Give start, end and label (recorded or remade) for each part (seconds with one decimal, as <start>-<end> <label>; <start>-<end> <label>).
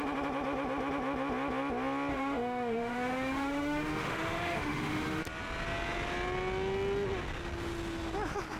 0.0-2.1 recorded; 2.1-5.2 remade; 5.2-8.6 recorded